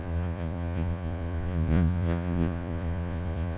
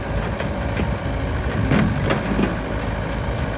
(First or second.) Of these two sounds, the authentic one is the second